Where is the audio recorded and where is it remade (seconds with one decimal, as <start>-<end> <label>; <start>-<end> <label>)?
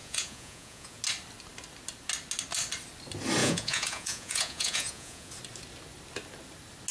0.0-1.0 remade; 1.0-3.4 recorded; 3.4-5.3 remade; 5.3-6.9 recorded